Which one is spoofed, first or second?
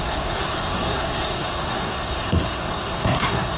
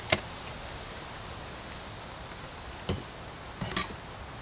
first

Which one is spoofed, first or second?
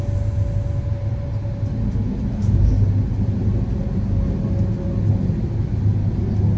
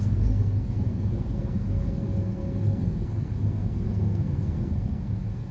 second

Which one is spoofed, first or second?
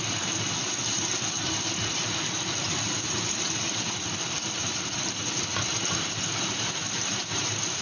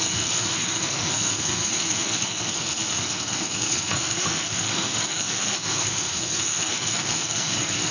second